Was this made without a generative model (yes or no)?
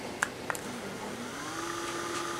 yes